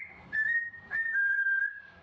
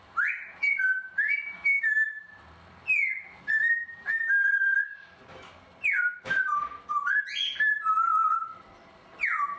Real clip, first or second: second